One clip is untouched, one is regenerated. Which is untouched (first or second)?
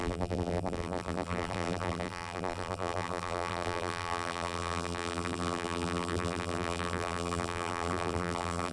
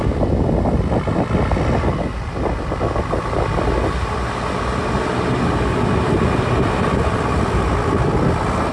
second